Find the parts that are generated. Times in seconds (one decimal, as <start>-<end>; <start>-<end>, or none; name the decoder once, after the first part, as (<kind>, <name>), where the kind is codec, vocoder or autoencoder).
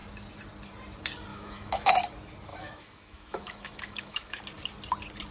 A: 1.3-1.9 (autoencoder, DAC-VAE); 2.5-4.4